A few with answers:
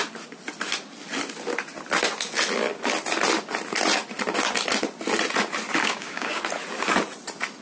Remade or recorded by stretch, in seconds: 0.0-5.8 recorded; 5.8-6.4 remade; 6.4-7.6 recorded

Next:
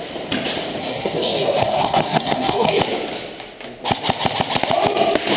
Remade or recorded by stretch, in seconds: 0.0-0.8 recorded; 0.8-2.8 remade; 2.8-5.4 recorded

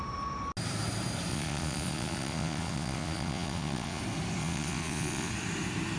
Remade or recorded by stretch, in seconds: 0.0-1.3 recorded; 1.3-4.0 remade; 4.0-4.4 recorded; 4.4-5.3 remade; 5.3-6.0 recorded

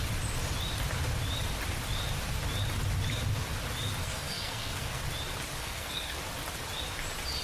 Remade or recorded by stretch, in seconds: 0.0-4.0 recorded; 4.0-5.0 remade; 5.0-5.6 recorded; 5.6-6.2 remade; 6.2-7.4 recorded

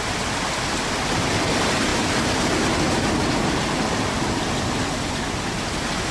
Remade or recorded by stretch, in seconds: 0.0-6.1 recorded